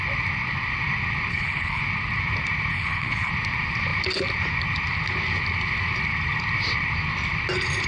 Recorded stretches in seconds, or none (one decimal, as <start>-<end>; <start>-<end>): 0.0-1.3; 1.8-2.7; 3.3-7.9